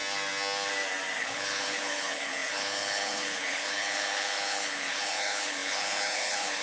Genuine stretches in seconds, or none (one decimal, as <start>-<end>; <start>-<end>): 0.0-1.2